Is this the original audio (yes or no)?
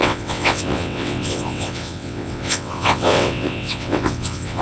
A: no